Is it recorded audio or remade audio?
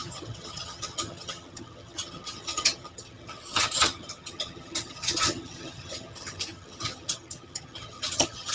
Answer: remade